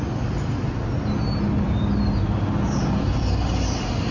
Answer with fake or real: real